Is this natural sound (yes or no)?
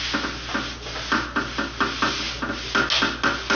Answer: yes